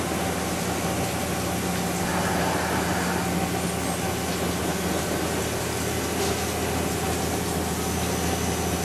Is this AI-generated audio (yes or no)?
no